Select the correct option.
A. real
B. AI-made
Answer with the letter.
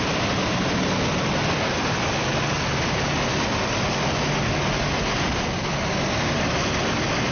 A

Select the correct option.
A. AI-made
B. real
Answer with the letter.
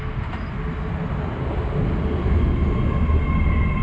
B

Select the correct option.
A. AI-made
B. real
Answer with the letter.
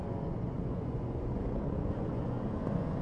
A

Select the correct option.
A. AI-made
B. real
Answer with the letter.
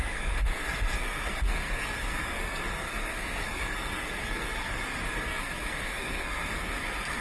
A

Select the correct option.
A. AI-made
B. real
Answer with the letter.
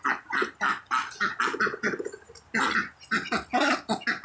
B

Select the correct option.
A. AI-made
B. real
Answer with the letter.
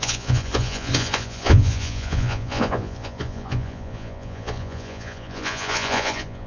A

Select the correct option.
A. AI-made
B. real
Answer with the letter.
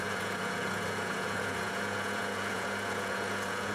A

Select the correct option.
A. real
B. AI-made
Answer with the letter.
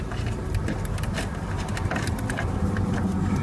A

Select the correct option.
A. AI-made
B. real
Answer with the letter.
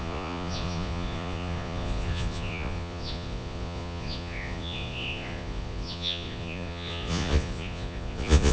A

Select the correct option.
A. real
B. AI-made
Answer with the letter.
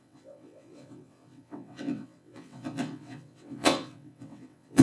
B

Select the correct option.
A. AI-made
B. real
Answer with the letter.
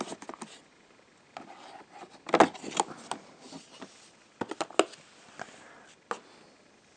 B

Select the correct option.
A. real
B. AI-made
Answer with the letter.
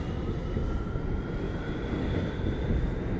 A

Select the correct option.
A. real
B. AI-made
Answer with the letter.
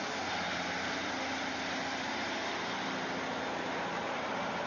A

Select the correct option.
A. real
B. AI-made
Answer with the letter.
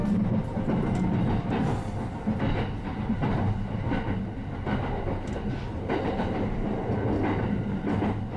A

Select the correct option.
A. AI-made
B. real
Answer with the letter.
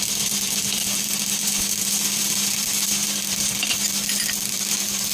B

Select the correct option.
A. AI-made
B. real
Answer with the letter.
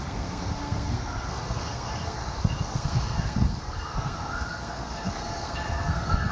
A